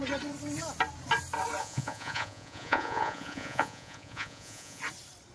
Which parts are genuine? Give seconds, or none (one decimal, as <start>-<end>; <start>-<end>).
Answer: 0.0-1.6; 4.8-5.3